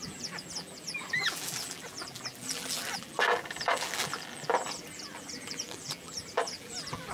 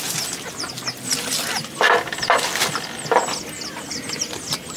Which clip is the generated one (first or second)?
first